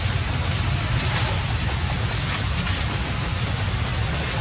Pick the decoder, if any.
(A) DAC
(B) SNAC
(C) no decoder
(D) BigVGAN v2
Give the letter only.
C